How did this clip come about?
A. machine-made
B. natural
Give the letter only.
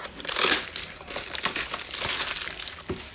B